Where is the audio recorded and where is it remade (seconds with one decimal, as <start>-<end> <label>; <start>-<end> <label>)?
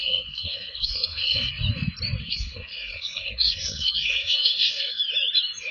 0.0-1.5 remade; 1.5-2.2 recorded; 2.2-5.0 remade; 5.0-5.7 recorded